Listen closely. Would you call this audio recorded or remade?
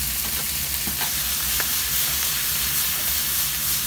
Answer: recorded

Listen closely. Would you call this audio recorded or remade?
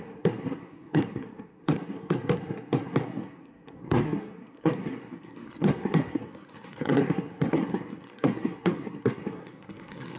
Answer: remade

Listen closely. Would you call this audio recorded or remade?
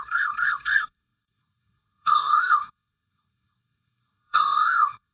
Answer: remade